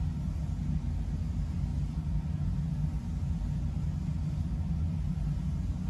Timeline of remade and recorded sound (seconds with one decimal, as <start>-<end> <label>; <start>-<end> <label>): 0.0-5.9 recorded